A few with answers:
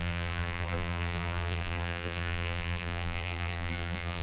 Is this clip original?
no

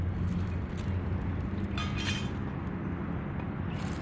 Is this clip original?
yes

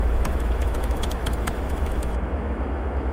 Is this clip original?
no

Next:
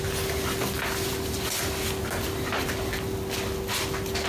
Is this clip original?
yes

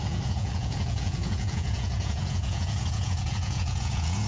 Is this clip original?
no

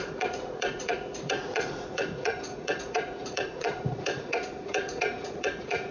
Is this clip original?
no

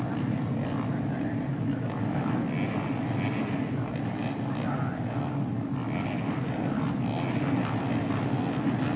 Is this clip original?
yes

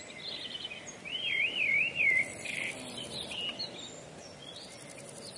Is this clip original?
yes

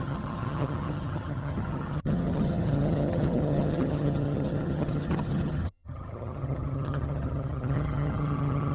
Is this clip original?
no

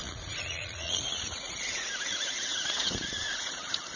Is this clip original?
no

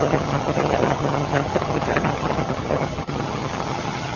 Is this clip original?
no